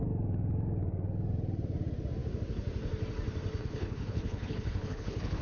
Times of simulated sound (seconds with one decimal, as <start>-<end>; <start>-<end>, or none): 3.6-5.4